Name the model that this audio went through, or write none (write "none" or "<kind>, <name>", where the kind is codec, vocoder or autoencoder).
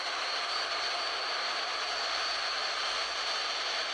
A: none